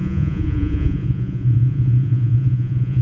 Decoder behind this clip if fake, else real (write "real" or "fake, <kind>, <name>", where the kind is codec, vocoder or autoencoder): fake, vocoder, Vocos